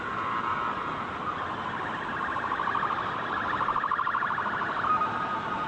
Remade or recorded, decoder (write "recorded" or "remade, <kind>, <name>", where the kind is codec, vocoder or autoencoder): recorded